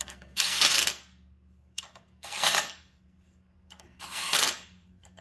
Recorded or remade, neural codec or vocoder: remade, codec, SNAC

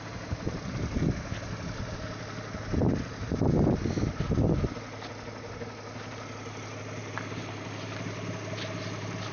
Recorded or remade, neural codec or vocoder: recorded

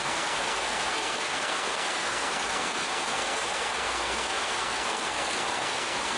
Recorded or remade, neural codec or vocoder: remade, codec, SNAC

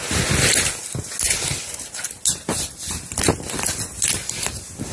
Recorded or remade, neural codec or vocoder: recorded